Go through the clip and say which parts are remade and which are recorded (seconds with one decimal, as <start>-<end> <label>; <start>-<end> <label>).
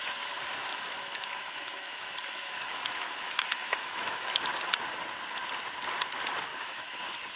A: 0.0-0.7 recorded; 0.7-4.4 remade; 4.4-6.5 recorded; 6.5-7.0 remade; 7.0-7.4 recorded